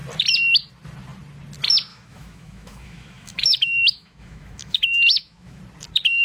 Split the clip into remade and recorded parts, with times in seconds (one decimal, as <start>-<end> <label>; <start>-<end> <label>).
0.0-1.9 recorded; 1.9-5.6 remade; 5.6-6.2 recorded